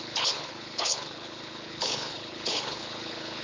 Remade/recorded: remade